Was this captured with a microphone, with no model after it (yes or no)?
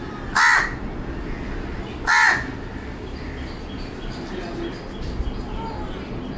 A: yes